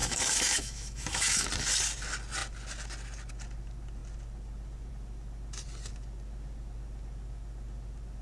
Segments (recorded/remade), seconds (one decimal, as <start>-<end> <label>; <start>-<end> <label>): 0.0-1.5 remade; 1.5-8.2 recorded

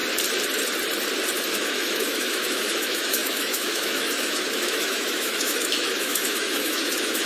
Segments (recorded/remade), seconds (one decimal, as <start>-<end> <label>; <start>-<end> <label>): 0.0-1.5 recorded; 1.5-7.3 remade